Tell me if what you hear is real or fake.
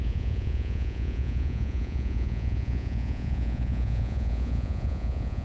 fake